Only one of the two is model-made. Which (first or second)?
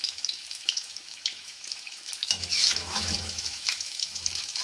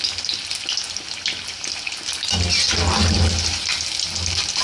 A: first